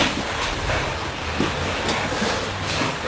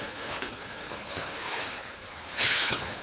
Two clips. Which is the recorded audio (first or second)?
first